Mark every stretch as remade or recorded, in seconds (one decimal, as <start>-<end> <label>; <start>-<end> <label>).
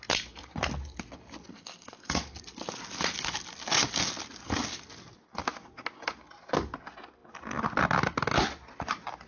0.0-1.5 recorded; 1.5-2.2 remade; 2.2-9.3 recorded